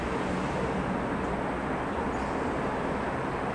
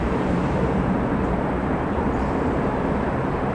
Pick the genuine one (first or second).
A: first